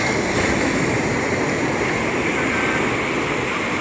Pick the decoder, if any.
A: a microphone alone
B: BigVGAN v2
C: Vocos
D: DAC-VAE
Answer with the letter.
A